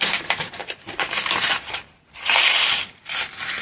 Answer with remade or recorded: remade